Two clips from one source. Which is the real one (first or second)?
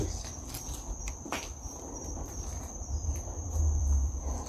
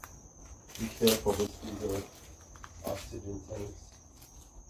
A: second